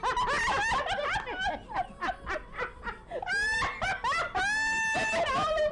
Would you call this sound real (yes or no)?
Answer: yes